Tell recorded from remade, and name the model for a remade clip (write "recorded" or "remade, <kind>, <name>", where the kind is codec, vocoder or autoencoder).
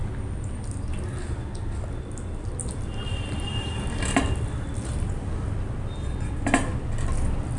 recorded